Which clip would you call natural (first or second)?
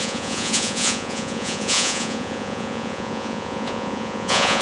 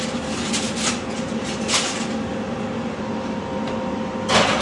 second